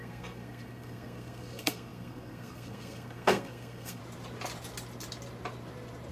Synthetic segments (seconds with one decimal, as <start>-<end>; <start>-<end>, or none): 0.0-4.0